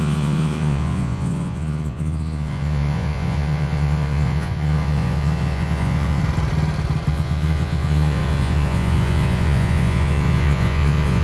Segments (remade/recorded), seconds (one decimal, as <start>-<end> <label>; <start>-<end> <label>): 0.0-6.2 remade; 6.2-7.1 recorded; 7.1-11.2 remade